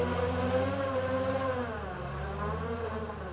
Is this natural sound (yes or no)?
yes